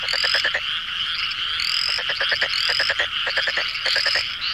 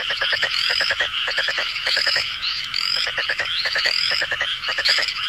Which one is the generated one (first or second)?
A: second